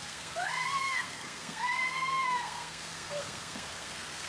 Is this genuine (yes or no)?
no